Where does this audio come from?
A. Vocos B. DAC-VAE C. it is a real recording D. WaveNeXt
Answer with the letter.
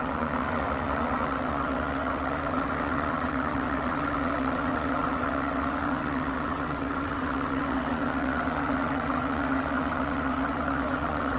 D